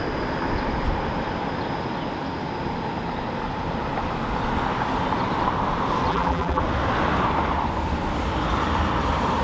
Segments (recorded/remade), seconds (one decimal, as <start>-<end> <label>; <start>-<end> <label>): 0.0-6.1 recorded; 6.1-6.6 remade; 6.6-9.4 recorded

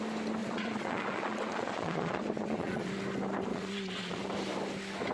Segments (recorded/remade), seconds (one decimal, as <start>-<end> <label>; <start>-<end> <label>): 0.0-0.4 recorded; 0.4-2.9 remade; 2.9-3.5 recorded; 3.5-4.2 remade; 4.2-5.1 recorded

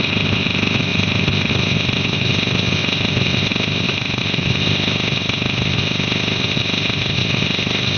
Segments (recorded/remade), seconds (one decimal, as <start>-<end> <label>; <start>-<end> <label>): 0.0-8.0 remade

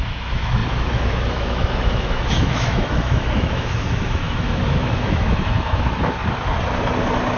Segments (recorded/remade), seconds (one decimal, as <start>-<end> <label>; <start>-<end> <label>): 0.0-6.2 remade; 6.2-7.4 recorded